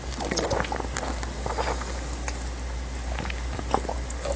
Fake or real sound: real